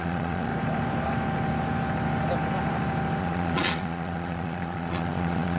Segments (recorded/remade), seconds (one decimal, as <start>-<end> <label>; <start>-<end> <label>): 0.0-0.5 remade; 0.5-3.2 recorded; 3.2-5.6 remade